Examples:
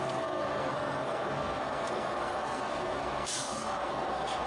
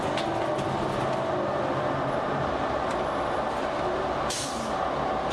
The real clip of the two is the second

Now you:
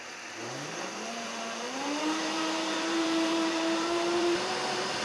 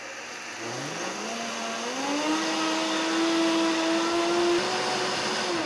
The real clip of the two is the second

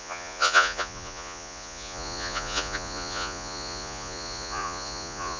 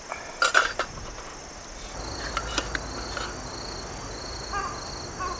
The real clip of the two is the second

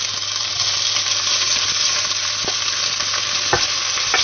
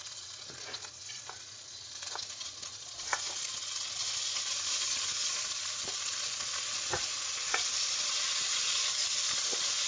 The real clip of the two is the first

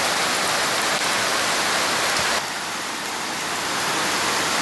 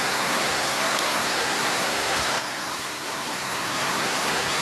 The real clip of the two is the first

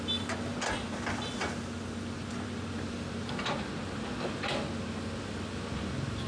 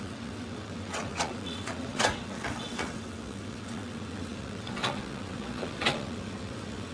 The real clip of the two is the first